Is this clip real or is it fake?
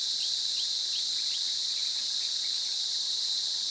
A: real